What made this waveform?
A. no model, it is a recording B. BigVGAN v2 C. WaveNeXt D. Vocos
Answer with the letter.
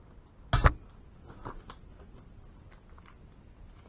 A